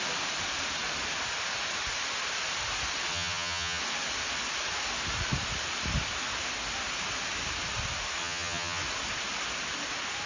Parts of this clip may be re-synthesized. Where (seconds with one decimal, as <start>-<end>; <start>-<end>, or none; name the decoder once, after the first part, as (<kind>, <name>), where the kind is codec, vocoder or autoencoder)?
3.1-3.8 (vocoder, HiFi-GAN); 8.2-8.8